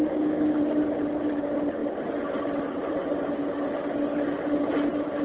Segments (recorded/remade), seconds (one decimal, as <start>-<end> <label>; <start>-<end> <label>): 0.0-0.6 remade; 0.6-5.2 recorded